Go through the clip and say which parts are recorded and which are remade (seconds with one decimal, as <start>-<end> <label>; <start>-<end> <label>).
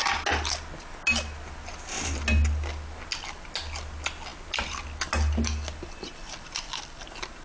0.0-7.4 recorded